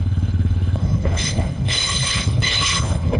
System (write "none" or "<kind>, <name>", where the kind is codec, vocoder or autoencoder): codec, HILCodec